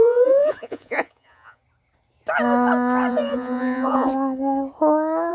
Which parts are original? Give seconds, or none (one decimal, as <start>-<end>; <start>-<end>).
1.6-3.1; 4.1-5.3